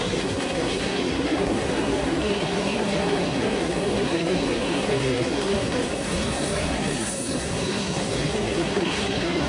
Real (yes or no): no